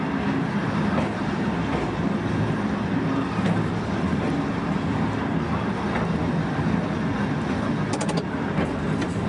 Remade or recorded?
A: recorded